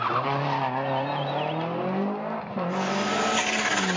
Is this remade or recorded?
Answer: recorded